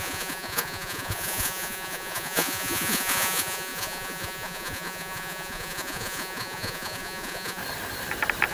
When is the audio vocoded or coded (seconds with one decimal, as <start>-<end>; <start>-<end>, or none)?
0.0-7.6